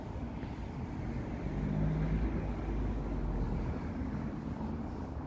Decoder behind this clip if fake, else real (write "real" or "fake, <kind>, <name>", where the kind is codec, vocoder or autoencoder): real